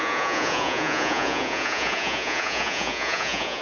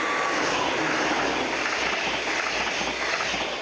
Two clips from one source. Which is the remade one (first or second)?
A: first